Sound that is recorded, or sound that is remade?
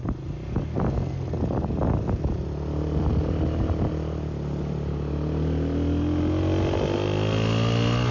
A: recorded